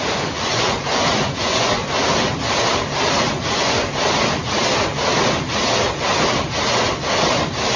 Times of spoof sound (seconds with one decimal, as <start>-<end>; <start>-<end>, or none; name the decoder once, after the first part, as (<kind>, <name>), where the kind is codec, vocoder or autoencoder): 0.0-1.8 (vocoder, Vocos); 3.3-3.8